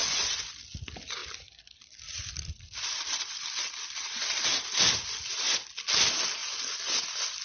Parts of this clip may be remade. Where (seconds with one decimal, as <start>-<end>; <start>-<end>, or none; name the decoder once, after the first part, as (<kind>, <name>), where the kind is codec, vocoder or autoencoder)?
1.2-4.3 (vocoder, BigVGAN v2); 6.4-7.0